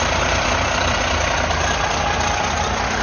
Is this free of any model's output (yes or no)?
no